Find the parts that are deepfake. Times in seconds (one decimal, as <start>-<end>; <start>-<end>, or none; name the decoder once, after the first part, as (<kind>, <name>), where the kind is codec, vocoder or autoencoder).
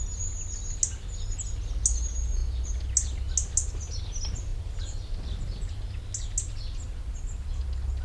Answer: none